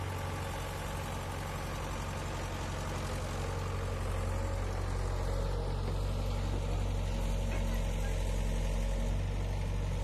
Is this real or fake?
real